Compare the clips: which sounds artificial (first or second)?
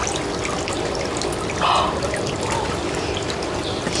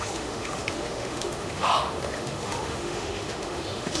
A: second